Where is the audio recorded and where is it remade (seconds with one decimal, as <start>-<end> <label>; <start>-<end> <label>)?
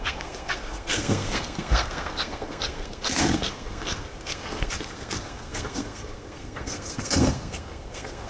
0.0-8.3 remade